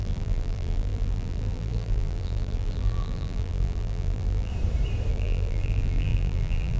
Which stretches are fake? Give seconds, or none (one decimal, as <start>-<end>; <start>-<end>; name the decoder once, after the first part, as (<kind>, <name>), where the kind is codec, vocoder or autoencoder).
0.0-4.5 (vocoder, BigVGAN v2); 5.1-6.8